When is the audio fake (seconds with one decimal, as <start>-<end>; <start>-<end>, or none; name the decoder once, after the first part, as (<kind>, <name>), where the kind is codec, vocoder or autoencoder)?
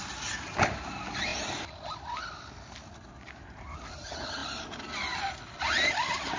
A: none